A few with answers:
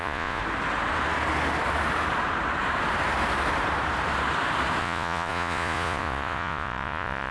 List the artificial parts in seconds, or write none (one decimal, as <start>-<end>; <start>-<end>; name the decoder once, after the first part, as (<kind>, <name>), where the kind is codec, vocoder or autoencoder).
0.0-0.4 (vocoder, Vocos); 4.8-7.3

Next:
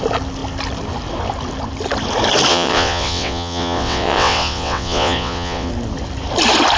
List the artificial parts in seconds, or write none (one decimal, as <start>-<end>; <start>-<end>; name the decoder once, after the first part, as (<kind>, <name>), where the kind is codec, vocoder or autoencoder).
2.5-5.7 (vocoder, WaveNeXt)

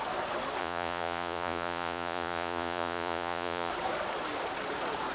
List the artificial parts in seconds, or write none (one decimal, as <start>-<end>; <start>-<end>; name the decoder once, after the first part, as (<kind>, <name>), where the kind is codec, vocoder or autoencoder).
0.6-3.7 (vocoder, Vocos)

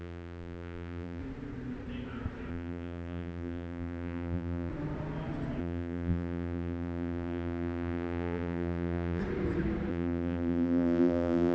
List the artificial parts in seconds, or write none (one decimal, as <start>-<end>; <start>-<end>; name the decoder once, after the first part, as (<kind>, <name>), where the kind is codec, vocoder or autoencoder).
0.0-1.2 (vocoder, BigVGAN v2); 2.5-4.7; 5.6-9.2; 9.9-11.5

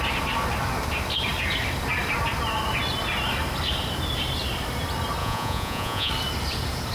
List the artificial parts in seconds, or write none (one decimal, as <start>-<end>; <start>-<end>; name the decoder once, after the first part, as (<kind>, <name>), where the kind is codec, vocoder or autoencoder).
5.2-6.1 (vocoder, Vocos)